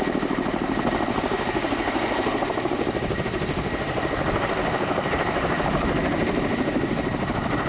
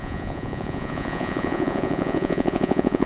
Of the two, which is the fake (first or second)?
second